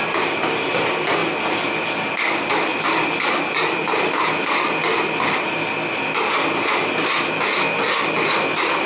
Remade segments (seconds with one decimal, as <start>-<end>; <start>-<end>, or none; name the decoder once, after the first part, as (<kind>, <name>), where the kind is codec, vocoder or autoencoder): none